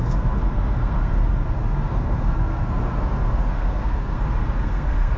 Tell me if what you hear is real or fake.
fake